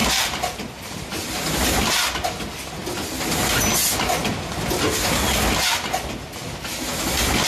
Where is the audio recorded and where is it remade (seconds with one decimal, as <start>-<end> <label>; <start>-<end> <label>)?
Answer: 0.0-1.1 remade; 1.1-7.5 recorded